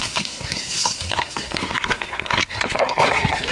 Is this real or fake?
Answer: fake